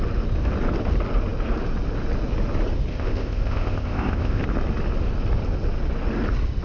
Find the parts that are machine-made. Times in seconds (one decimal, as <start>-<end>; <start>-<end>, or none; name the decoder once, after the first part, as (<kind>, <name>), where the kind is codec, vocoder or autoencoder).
2.9-4.4 (codec, ZipCodec)